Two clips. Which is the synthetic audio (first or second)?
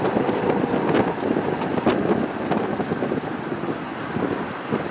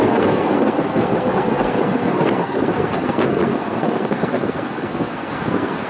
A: second